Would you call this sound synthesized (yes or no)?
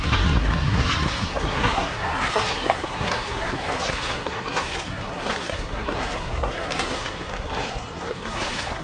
yes